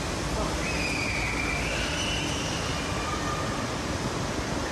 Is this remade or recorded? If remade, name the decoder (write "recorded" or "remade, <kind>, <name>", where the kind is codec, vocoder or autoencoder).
recorded